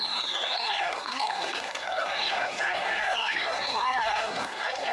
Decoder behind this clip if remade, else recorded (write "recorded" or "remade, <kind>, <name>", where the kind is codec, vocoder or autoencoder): remade, codec, SNAC